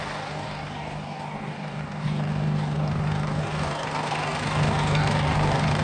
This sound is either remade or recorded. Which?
remade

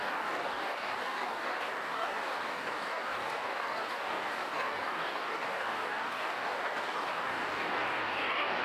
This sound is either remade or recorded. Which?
remade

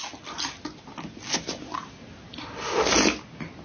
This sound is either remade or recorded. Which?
recorded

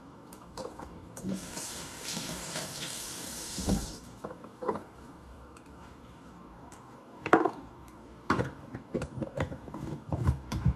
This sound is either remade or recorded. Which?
remade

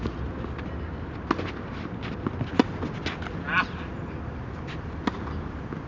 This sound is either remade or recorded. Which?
recorded